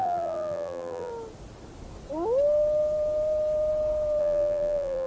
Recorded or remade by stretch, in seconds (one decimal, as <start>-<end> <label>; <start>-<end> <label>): 0.0-1.1 remade; 1.1-4.2 recorded; 4.2-5.1 remade